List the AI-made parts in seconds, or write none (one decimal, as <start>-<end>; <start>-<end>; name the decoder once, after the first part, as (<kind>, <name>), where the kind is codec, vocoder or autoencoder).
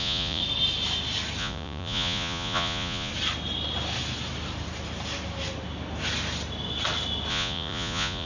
0.0-0.4 (vocoder, Vocos); 1.4-3.1; 7.3-8.3